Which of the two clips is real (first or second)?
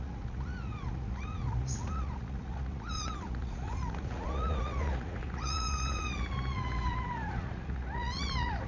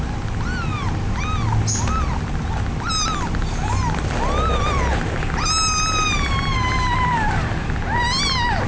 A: second